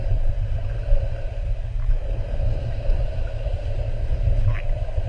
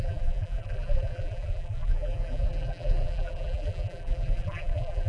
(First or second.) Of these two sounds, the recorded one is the first